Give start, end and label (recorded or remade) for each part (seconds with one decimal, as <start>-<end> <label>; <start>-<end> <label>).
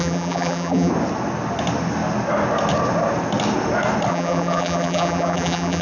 0.0-0.9 remade; 0.9-4.1 recorded; 4.1-5.8 remade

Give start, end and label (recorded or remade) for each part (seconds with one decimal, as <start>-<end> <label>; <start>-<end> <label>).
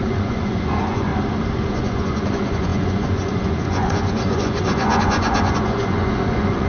0.0-1.1 remade; 1.1-1.7 recorded; 1.7-6.7 remade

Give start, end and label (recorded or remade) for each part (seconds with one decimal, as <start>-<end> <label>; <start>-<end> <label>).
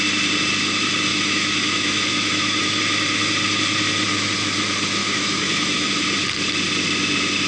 0.0-1.1 recorded; 1.1-2.8 remade; 2.8-5.0 recorded; 5.0-5.9 remade; 5.9-7.5 recorded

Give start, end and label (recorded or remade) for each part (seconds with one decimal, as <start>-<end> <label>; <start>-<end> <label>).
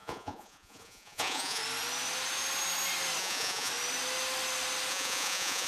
0.0-1.6 remade; 1.6-3.2 recorded; 3.2-3.7 remade; 3.7-4.9 recorded; 4.9-5.7 remade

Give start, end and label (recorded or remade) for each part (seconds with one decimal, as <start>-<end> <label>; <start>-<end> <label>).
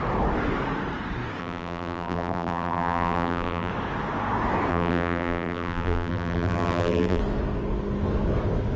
0.0-1.4 recorded; 1.4-3.7 remade; 3.7-4.7 recorded; 4.7-7.2 remade; 7.2-8.8 recorded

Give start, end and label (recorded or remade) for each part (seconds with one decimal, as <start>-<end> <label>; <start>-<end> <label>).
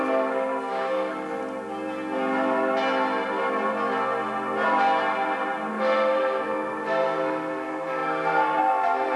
0.0-1.4 remade; 1.4-5.7 recorded; 5.7-9.2 remade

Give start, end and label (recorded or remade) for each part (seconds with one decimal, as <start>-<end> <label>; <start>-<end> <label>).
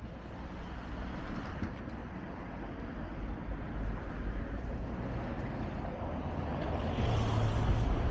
0.0-8.1 recorded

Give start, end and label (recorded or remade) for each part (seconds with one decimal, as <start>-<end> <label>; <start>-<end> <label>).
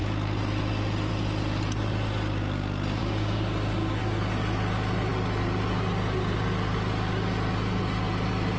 0.0-3.0 recorded; 3.0-4.0 remade; 4.0-8.6 recorded